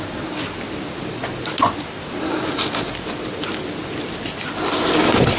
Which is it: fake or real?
real